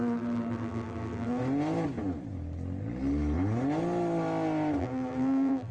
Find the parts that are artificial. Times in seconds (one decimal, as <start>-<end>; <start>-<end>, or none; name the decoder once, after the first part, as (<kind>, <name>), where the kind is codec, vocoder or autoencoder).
0.0-1.4 (vocoder, BigVGAN v2); 4.8-5.7